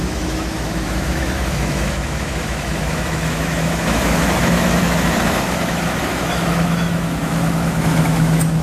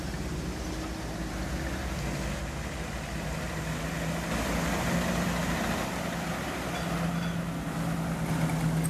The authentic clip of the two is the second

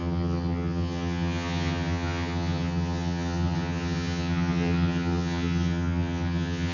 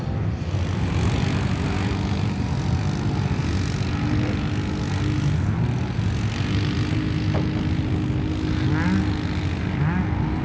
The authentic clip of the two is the second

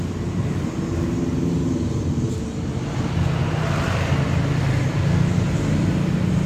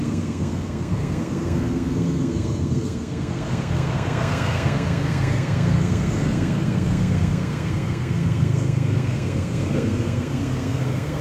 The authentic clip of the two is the first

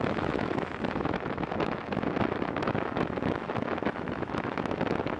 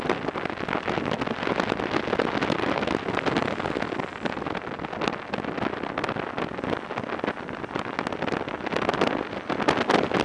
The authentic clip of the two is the second